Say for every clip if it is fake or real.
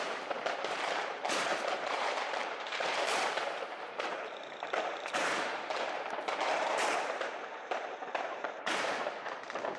fake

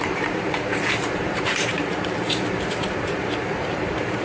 fake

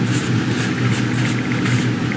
real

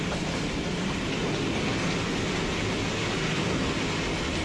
real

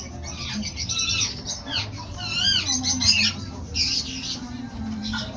real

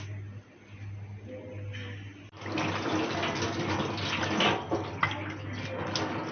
real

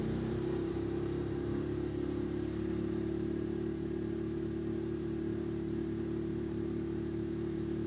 fake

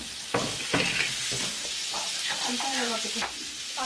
real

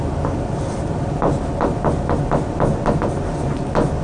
real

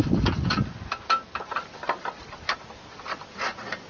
real